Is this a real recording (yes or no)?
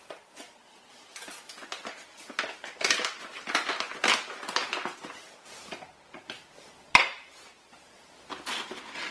yes